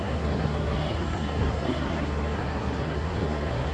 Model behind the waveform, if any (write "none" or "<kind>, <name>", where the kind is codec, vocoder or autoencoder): codec, SNAC